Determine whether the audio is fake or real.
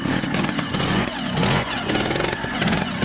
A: fake